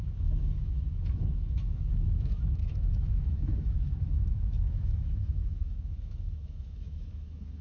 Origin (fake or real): fake